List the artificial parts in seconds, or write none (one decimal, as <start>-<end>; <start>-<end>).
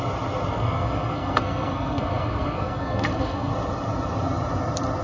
0.5-3.5